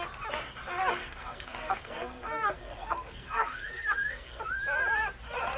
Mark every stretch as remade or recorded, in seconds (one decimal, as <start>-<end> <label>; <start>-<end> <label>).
0.0-1.0 recorded; 1.0-4.4 remade; 4.4-5.6 recorded